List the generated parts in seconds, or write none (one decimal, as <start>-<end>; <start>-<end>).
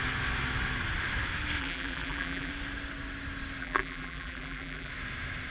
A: 1.6-2.5; 3.6-4.9